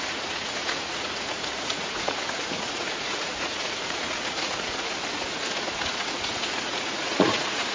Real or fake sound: fake